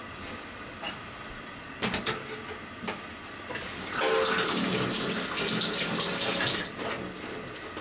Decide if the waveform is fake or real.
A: real